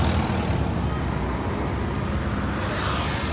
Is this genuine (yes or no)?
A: yes